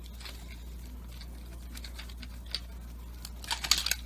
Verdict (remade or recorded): recorded